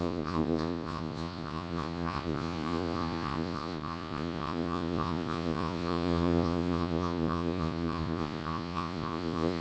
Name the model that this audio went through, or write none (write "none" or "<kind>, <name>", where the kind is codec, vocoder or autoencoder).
vocoder, Vocos